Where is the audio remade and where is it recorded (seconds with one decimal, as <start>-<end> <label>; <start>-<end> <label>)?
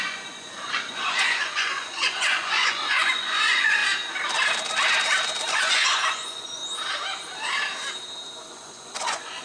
0.0-3.8 remade; 3.8-5.5 recorded; 5.5-6.6 remade; 6.6-8.5 recorded; 8.5-9.4 remade